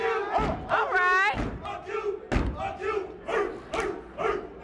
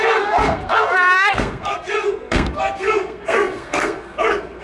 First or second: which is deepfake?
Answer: second